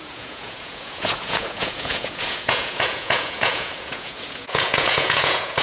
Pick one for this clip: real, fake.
fake